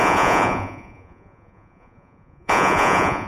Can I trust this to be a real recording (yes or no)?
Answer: no